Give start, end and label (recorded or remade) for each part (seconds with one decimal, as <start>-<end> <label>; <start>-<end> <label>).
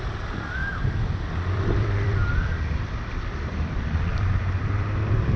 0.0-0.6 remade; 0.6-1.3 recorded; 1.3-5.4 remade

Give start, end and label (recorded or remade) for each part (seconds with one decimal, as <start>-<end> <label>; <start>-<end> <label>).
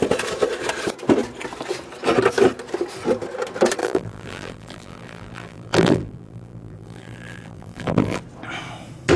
0.0-3.8 recorded; 3.8-8.2 remade; 8.2-9.2 recorded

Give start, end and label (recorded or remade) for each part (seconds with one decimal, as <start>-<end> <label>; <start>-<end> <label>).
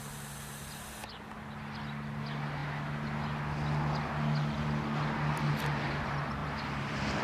0.0-6.4 recorded; 6.4-7.2 remade